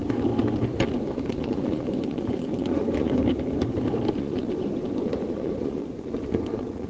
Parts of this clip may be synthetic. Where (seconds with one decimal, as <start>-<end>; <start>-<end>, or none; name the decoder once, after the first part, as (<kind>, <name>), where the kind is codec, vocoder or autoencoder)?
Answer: 1.3-3.2 (vocoder, Vocos); 4.2-6.9